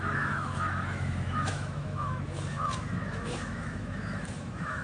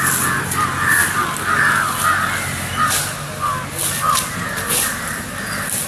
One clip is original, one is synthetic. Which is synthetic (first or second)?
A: first